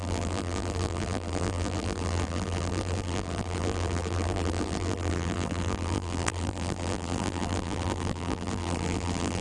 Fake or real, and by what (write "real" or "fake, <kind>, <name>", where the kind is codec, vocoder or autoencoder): fake, vocoder, BigVGAN v2